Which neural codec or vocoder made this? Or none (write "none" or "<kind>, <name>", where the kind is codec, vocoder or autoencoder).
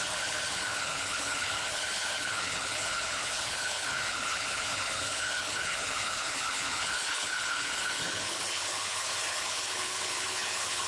codec, HILCodec